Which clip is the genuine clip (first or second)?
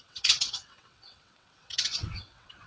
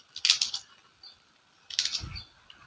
second